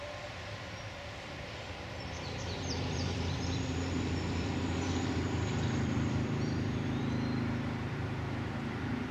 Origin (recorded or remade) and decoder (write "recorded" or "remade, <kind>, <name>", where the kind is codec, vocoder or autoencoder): remade, vocoder, BigVGAN v2